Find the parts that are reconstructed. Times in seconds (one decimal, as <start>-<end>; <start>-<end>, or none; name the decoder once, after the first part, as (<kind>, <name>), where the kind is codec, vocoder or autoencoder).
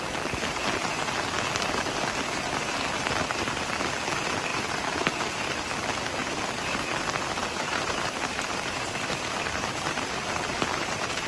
4.5-5.6 (vocoder, BigVGAN v2); 6.2-6.9; 7.4-11.3